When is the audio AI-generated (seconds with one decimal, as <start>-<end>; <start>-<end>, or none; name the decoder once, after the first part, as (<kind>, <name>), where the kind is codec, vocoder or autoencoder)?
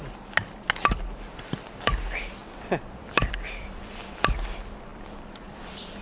none